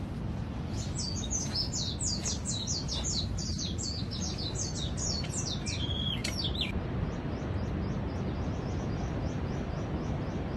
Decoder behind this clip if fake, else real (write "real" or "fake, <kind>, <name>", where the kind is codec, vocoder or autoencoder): real